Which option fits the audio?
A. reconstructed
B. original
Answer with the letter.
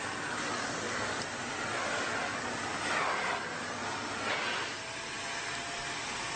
B